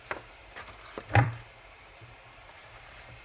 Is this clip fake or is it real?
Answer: fake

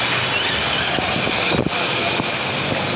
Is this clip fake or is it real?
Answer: real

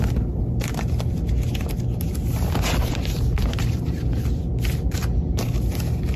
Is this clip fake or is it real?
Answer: real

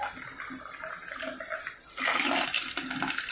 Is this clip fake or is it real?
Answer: real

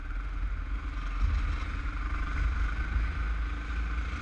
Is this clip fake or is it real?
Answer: real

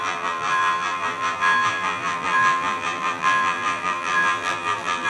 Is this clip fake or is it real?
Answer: fake